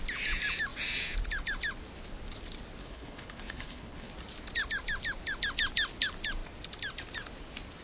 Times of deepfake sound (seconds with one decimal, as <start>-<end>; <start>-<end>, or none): 2.8-4.1